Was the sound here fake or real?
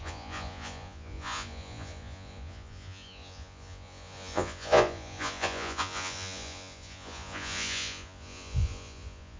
fake